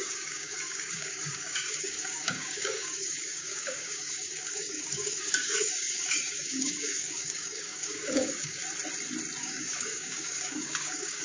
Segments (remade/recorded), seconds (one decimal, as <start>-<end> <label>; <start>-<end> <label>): 0.0-8.6 remade; 8.6-9.4 recorded; 9.4-11.2 remade